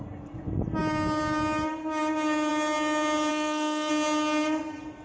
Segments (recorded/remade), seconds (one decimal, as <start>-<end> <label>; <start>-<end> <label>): 0.0-3.3 recorded; 3.3-3.9 remade; 3.9-5.0 recorded